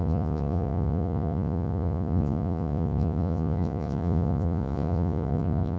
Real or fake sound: fake